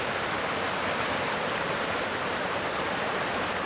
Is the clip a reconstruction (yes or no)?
yes